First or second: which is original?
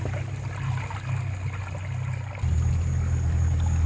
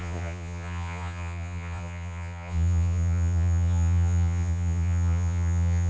first